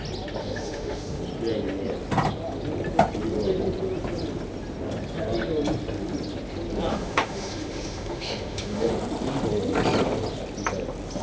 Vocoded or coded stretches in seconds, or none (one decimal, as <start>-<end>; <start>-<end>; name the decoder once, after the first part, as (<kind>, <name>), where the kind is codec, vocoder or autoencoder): 0.4-1.2 (autoencoder, DAC-VAE); 6.9-8.9